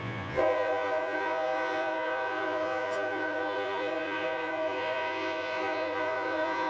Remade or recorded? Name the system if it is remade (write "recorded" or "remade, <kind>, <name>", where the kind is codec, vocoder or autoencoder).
remade, vocoder, Vocos